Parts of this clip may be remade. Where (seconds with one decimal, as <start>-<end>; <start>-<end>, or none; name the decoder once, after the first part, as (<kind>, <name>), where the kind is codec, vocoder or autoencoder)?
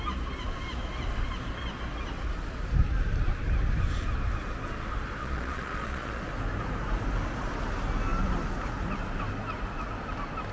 5.2-6.2 (vocoder, Vocos)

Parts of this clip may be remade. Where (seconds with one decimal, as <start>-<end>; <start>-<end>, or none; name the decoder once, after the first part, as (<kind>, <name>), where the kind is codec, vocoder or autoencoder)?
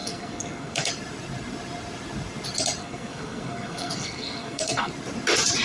0.0-0.9 (codec, SNAC); 2.8-4.9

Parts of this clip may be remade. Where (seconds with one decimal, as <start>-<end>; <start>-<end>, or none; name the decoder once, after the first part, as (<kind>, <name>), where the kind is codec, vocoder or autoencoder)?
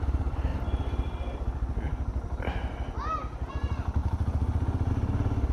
4.0-4.9 (vocoder, BigVGAN v2)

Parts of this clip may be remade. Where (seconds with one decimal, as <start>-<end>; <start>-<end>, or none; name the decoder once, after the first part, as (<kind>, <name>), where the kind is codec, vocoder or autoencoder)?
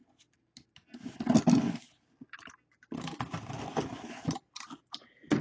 none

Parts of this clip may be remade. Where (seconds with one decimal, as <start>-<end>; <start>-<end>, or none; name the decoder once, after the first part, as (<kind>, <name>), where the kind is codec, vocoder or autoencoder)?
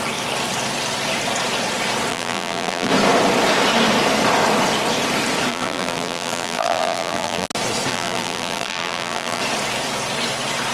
2.1-2.9 (vocoder, BigVGAN v2); 5.5-7.5; 7.9-9.4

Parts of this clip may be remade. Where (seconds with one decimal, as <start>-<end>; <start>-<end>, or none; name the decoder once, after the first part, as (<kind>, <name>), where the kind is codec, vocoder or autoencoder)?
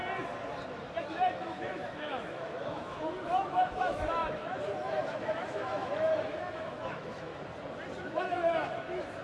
1.0-7.3 (autoencoder, DAC-VAE); 8.0-9.2